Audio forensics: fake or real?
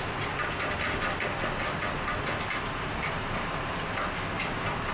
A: real